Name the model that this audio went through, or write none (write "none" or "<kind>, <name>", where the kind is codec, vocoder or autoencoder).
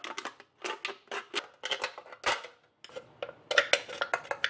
none